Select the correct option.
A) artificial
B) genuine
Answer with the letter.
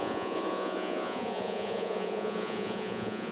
A